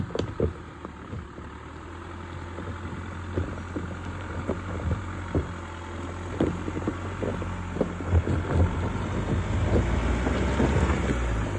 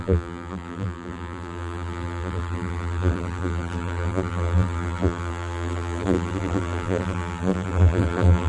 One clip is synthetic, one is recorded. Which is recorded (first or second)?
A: first